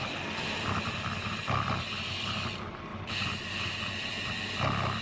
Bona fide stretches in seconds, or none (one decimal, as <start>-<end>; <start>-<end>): 0.0-5.0